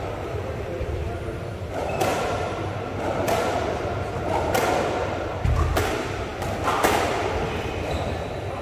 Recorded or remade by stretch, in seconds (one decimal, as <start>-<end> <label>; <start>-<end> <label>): 0.0-5.3 remade; 5.3-5.8 recorded; 5.8-8.6 remade